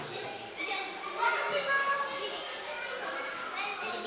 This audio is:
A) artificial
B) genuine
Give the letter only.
B